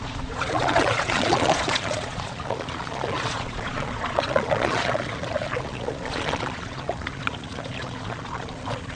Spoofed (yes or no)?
yes